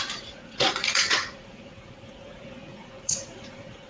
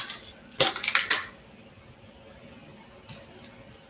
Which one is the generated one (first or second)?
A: first